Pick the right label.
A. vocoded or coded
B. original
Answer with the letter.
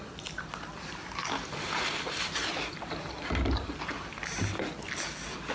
B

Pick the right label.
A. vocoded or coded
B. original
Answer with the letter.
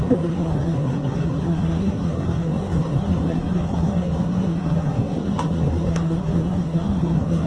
A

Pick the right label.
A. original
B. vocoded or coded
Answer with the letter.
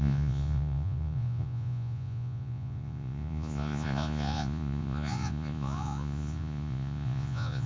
B